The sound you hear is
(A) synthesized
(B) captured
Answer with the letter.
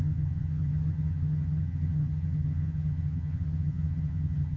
A